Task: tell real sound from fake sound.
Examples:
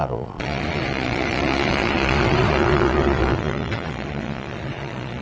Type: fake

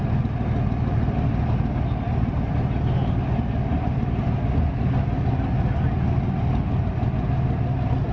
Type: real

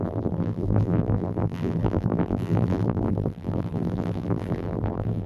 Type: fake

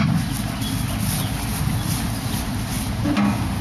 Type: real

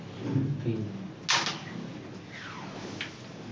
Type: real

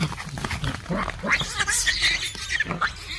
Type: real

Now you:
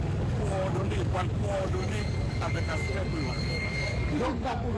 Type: fake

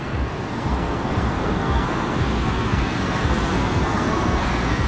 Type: fake